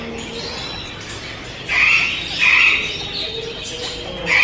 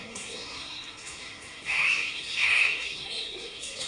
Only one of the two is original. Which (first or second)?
first